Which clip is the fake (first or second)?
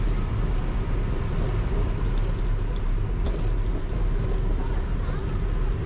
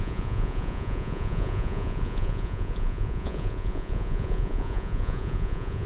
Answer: second